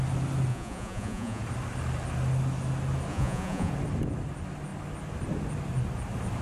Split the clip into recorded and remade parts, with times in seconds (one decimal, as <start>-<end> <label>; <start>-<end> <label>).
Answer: 0.0-0.5 recorded; 0.5-1.4 remade; 1.4-3.1 recorded; 3.1-3.7 remade; 3.7-6.4 recorded